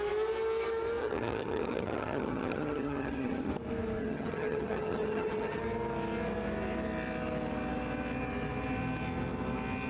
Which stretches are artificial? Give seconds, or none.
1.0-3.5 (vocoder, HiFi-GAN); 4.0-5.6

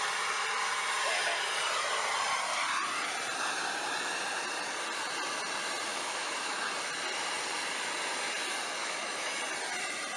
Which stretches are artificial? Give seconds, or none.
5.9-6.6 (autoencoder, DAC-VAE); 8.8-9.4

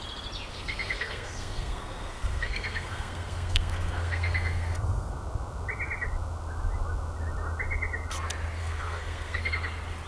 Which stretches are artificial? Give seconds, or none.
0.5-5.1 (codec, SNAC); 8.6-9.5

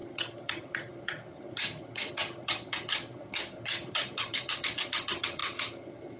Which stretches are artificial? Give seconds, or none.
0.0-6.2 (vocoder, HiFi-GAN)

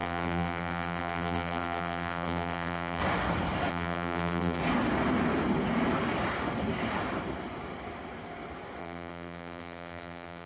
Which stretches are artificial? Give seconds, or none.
0.0-3.0 (vocoder, BigVGAN v2); 3.7-4.6; 8.8-10.5

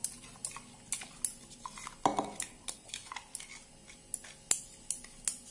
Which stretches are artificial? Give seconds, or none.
none